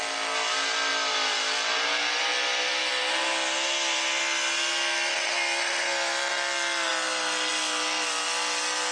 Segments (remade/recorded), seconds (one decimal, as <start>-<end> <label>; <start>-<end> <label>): 0.0-8.9 recorded